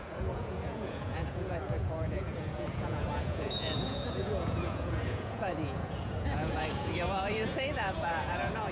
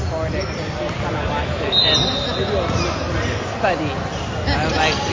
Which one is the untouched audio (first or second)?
second